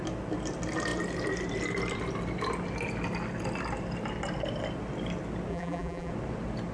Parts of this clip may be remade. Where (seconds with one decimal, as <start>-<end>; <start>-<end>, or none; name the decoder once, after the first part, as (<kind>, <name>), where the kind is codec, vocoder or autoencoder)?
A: 5.5-6.1 (vocoder, BigVGAN v2)